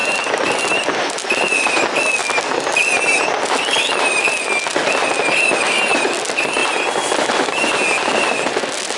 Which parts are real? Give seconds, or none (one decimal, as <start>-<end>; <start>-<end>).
0.0-9.0